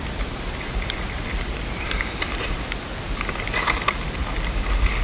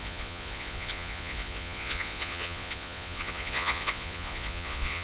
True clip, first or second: first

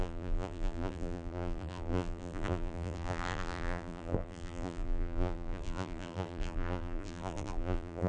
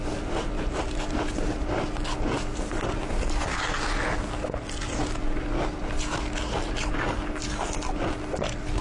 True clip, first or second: second